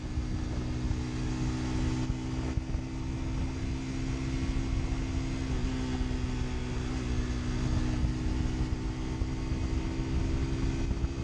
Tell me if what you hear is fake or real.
real